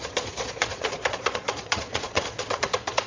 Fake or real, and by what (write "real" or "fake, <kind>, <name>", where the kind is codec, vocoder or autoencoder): fake, vocoder, Vocos